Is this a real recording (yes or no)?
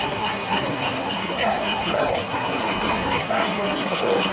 no